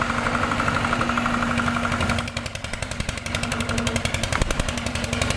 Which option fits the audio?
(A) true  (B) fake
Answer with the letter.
B